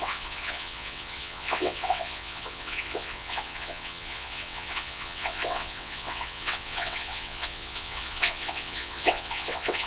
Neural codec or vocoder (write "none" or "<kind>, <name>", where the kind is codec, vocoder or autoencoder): vocoder, WaveNeXt